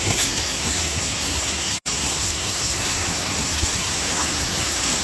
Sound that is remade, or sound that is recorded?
remade